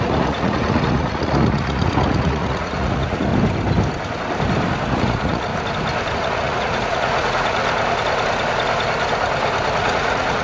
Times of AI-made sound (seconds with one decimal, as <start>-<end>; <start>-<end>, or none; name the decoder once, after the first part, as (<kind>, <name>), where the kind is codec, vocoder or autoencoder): 0.0-3.3 (vocoder, Vocos); 4.9-5.5; 6.1-7.6; 9.8-10.4